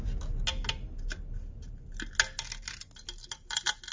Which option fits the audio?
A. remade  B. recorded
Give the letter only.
B